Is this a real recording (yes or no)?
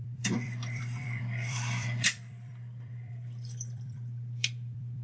no